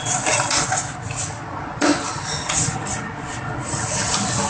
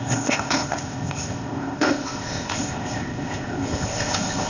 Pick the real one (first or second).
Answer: first